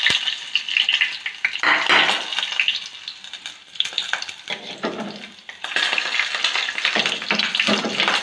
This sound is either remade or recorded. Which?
recorded